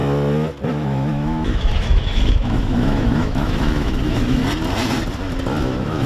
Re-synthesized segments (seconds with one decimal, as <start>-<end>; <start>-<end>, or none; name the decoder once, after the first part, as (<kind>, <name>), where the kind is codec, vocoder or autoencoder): 0.7-4.4 (autoencoder, DAC-VAE); 5.6-6.1